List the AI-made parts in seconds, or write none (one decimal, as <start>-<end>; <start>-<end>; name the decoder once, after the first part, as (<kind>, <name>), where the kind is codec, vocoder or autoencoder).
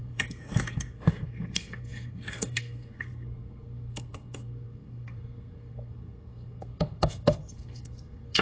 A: 0.0-8.4 (codec, SNAC)